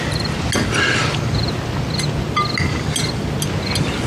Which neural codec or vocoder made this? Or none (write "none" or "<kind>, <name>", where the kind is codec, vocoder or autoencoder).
none